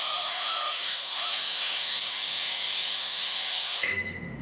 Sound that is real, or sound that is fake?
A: fake